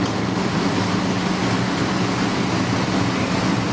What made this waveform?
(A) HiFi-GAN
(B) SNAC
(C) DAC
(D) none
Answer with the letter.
D